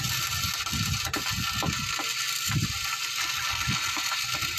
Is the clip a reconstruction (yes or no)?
no